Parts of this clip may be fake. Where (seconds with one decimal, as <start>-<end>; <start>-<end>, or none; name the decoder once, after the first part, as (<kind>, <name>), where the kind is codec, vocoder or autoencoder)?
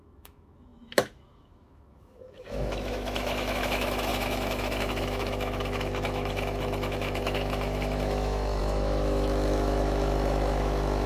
0.0-11.1 (autoencoder, DAC-VAE)